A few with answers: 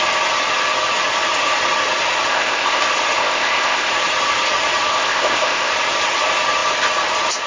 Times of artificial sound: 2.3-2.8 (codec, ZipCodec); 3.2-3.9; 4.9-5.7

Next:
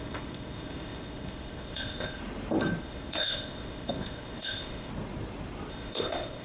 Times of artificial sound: 0.0-2.2 (codec, ZipCodec); 2.8-4.9; 5.7-6.4

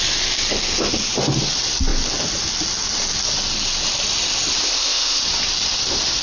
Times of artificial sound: 4.6-5.2 (codec, ZipCodec)

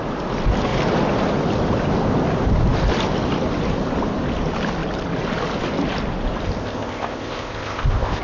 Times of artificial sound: 6.6-8.2 (codec, ZipCodec)